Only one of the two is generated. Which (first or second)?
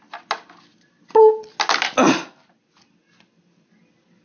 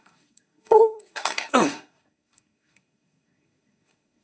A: second